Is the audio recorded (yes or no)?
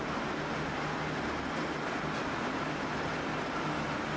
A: yes